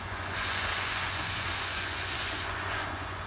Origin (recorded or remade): remade